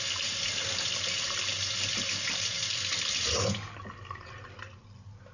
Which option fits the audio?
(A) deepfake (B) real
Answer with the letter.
B